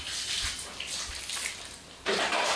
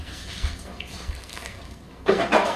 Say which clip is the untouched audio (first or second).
first